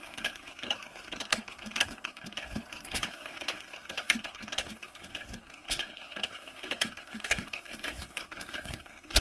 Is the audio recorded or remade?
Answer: remade